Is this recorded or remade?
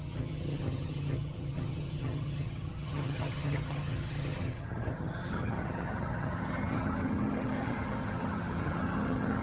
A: remade